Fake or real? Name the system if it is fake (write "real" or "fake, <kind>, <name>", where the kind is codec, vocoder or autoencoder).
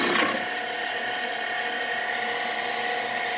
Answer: real